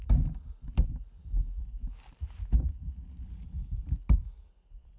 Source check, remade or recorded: recorded